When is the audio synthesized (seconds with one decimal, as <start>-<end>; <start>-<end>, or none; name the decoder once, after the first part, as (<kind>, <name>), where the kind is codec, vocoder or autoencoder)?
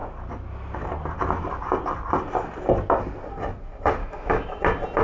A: 4.0-4.6 (autoencoder, DAC-VAE)